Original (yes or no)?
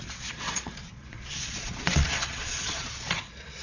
no